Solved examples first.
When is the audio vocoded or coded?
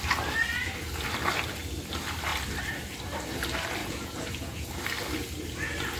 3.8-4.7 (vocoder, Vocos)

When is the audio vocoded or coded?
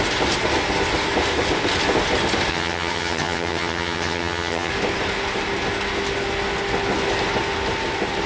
2.5-4.7 (vocoder, HiFi-GAN)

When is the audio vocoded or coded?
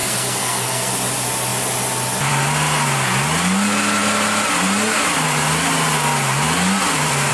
0.0-0.9 (codec, SNAC)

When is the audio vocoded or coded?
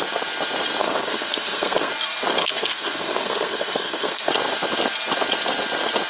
0.8-1.9 (codec, SNAC); 2.4-4.3